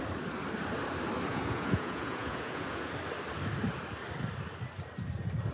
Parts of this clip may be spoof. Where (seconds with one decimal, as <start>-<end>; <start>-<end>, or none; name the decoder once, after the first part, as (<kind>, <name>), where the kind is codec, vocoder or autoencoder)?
1.3-2.9 (vocoder, Vocos)